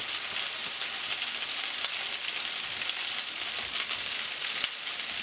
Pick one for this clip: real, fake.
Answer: real